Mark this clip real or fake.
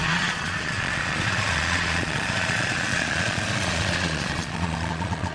fake